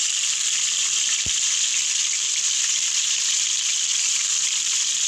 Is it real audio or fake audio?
fake